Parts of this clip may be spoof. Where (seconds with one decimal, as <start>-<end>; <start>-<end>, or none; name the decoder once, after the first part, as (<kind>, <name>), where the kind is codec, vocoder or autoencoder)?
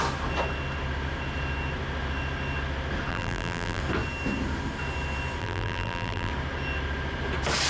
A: 3.1-3.8 (vocoder, BigVGAN v2); 5.4-6.3